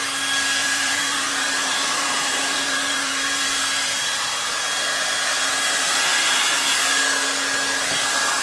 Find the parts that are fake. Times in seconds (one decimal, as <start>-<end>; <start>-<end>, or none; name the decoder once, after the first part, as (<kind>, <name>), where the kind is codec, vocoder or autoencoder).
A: 0.6-3.6 (vocoder, BigVGAN v2)